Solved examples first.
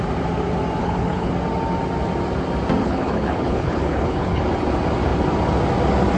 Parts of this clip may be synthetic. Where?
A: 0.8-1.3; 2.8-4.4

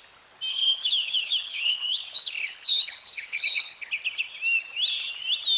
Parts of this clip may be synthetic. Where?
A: 0.5-3.9

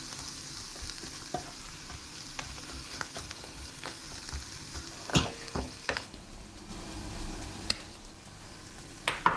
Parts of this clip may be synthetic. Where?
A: 2.8-4.0; 5.1-6.2

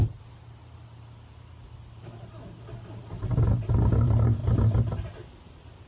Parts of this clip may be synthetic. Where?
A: none

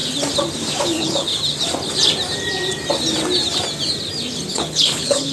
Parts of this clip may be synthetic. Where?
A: 0.8-1.3; 4.5-5.3

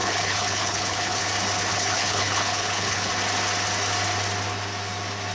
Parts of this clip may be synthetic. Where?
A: 0.0-1.2; 1.7-3.1

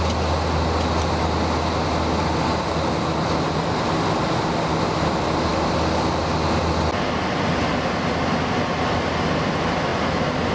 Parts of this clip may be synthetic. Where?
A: none